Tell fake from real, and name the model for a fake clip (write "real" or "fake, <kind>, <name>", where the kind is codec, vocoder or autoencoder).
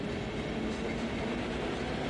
real